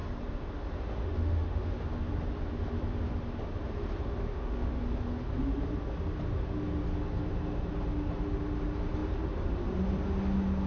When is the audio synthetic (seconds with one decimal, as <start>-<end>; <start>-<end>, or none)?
1.0-1.8; 4.3-4.8